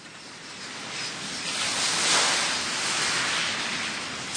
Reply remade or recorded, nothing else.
recorded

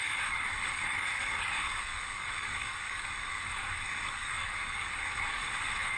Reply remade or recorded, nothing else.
remade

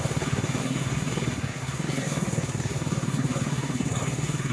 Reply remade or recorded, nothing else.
remade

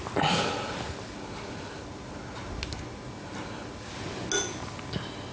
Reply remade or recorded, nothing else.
recorded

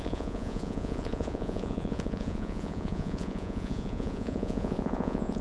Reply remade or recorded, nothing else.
remade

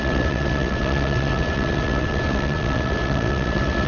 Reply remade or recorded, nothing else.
remade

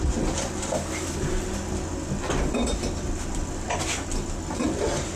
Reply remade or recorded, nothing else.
recorded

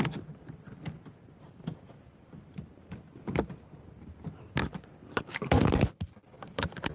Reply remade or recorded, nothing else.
recorded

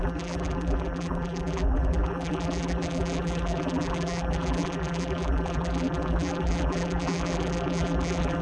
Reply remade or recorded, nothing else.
remade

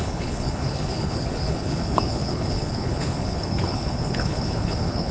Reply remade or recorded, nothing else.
remade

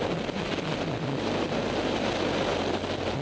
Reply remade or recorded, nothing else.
recorded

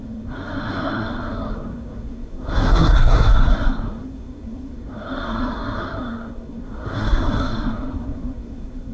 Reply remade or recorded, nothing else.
remade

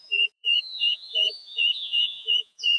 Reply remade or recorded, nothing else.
remade